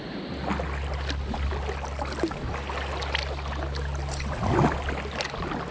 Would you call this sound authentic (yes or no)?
yes